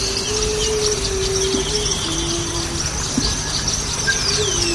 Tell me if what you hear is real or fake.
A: real